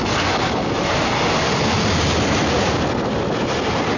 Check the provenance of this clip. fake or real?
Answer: real